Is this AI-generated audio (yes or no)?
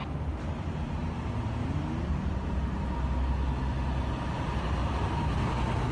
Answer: no